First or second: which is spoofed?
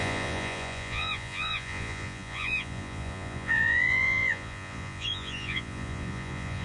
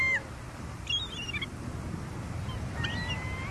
first